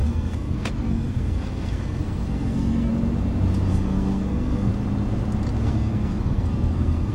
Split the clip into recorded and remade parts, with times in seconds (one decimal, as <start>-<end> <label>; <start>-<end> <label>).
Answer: 0.0-2.9 remade; 2.9-3.7 recorded; 3.7-4.7 remade; 4.7-5.6 recorded; 5.6-7.1 remade

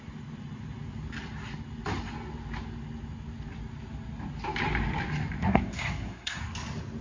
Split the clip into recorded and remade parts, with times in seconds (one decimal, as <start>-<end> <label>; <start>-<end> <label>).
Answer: 0.0-5.4 recorded; 5.4-6.4 remade; 6.4-7.0 recorded

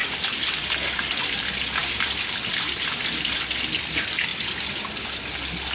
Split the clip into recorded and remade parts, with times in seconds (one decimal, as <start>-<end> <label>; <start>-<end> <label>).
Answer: 0.0-5.7 recorded

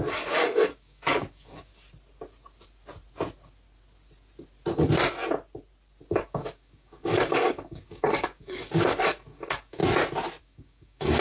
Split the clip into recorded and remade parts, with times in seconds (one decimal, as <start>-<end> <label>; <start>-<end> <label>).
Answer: 0.0-1.7 remade; 1.7-6.1 recorded; 6.1-9.8 remade; 9.8-10.4 recorded; 10.4-11.2 remade

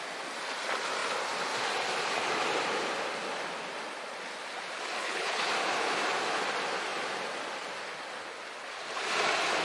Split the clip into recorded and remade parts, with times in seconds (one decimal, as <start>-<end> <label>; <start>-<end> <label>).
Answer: 0.0-5.0 recorded; 5.0-5.5 remade; 5.5-9.6 recorded

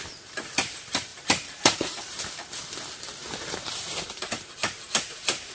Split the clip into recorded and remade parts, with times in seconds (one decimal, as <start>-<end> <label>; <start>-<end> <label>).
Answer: 0.0-1.1 recorded; 1.1-2.2 remade; 2.2-3.2 recorded; 3.2-5.5 remade

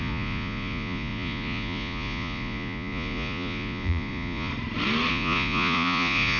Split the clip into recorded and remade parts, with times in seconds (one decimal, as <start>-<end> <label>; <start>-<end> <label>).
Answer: 0.0-4.5 remade; 4.5-5.1 recorded; 5.1-6.4 remade

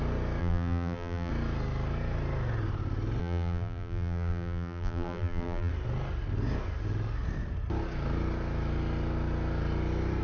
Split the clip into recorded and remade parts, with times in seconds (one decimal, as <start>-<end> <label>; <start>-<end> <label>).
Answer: 0.0-0.4 recorded; 0.4-1.3 remade; 1.3-3.2 recorded; 3.2-5.7 remade; 5.7-10.2 recorded